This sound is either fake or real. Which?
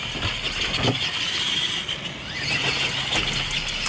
real